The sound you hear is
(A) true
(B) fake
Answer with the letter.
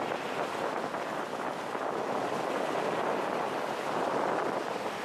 A